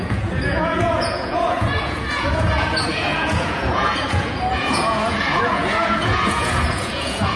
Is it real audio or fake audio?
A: fake